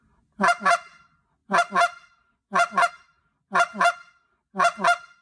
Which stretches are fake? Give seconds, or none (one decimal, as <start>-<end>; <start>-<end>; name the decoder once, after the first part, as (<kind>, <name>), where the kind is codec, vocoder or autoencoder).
none